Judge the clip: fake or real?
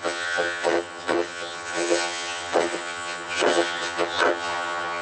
fake